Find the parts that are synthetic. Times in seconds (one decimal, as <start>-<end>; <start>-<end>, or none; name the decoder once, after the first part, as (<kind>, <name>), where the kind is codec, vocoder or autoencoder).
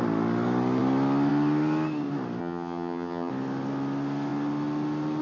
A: 2.4-3.3 (vocoder, HiFi-GAN)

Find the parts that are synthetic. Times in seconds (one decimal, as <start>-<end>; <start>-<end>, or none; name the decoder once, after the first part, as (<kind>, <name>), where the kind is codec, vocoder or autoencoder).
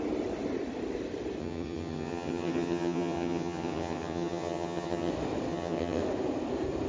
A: 1.4-5.1 (vocoder, HiFi-GAN); 5.5-6.0